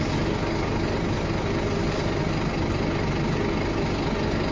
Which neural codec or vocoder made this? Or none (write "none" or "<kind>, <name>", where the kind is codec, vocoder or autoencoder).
none